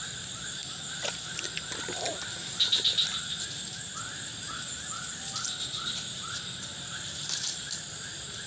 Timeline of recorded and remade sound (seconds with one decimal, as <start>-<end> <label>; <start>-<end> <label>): 0.0-0.6 recorded; 0.6-1.1 remade; 1.1-8.5 recorded